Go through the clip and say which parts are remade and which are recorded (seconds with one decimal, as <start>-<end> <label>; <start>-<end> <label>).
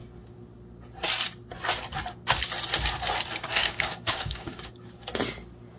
0.0-3.6 recorded; 3.6-4.7 remade; 4.7-5.8 recorded